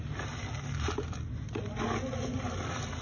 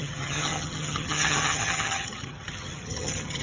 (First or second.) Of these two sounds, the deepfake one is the second